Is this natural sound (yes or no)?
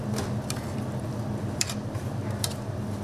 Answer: no